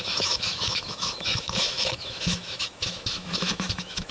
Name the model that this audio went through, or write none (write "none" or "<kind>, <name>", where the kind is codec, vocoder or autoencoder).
autoencoder, DAC-VAE